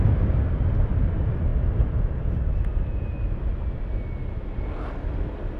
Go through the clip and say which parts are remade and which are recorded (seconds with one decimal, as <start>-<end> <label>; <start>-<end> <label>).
0.0-5.6 recorded